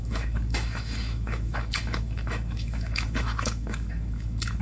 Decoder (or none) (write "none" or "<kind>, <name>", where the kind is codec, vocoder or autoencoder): autoencoder, DAC-VAE